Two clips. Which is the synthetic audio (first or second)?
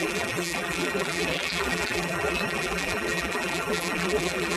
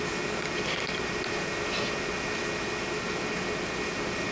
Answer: first